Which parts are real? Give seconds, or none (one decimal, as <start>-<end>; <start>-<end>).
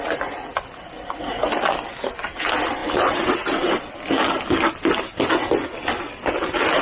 0.0-6.8